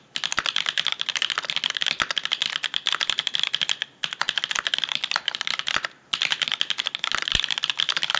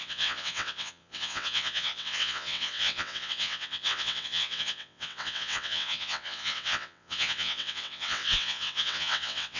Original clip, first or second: first